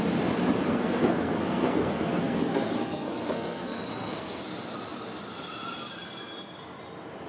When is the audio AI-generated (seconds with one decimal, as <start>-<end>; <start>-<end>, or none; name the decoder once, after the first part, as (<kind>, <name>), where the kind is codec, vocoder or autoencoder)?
0.7-4.4 (codec, SNAC)